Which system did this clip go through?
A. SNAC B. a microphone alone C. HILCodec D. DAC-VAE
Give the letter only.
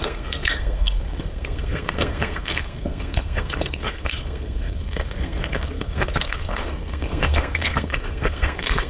A